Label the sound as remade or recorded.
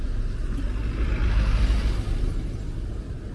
recorded